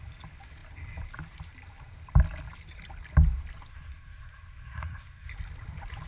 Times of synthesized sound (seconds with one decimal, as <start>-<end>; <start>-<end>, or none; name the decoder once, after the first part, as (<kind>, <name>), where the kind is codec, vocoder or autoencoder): 3.7-5.3 (codec, SNAC)